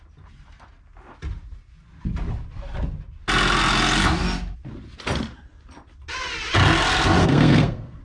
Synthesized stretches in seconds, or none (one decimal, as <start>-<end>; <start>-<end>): 7.2-8.0